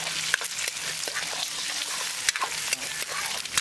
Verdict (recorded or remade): recorded